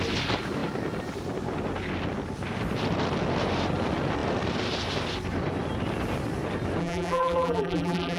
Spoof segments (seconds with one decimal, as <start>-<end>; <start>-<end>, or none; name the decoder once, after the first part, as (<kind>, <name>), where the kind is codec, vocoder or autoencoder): 6.8-8.2 (vocoder, BigVGAN v2)